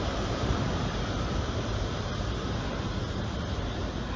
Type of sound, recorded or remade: remade